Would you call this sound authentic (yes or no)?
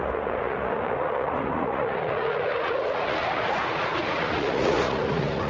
no